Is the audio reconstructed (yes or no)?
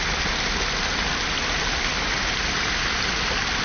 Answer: no